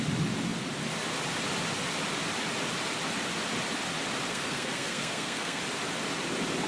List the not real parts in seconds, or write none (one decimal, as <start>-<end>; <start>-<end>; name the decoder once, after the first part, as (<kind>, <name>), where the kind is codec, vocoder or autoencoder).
4.3-5.6 (codec, SNAC)